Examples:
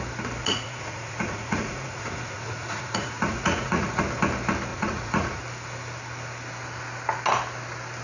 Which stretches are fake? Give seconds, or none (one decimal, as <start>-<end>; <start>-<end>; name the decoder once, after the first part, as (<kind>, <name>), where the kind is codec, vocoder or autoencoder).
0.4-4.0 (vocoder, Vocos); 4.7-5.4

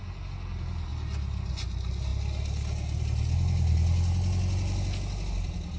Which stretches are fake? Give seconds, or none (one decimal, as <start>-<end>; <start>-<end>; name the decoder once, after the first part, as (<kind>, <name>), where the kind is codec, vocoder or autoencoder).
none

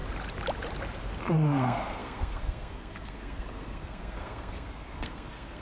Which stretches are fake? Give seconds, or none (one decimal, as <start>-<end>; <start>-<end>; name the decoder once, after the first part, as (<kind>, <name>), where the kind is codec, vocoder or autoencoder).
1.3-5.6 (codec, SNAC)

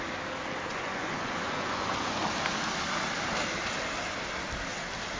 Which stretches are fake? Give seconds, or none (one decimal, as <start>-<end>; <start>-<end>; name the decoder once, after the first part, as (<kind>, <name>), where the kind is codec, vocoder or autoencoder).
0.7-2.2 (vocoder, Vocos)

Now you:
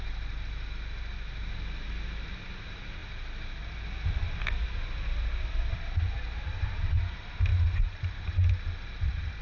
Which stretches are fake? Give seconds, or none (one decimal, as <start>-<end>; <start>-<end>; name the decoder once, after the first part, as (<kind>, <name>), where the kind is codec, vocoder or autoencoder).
none